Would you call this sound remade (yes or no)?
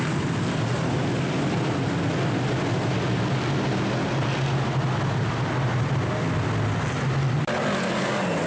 no